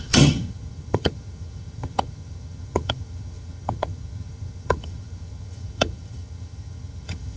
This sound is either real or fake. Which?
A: fake